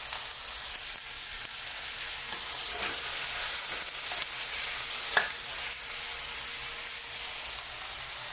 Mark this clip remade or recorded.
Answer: recorded